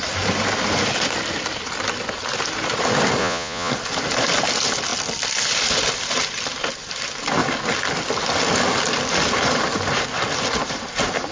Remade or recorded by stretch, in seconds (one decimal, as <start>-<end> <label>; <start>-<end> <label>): 0.0-3.2 recorded; 3.2-3.7 remade; 3.7-11.3 recorded